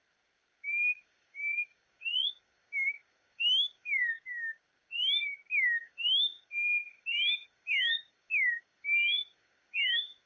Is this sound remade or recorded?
remade